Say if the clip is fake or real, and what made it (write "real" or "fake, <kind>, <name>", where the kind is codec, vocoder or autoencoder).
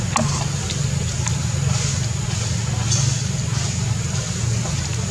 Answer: real